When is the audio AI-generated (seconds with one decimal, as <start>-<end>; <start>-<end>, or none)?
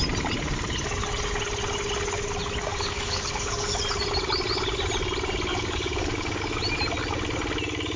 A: 2.6-3.8; 5.5-6.4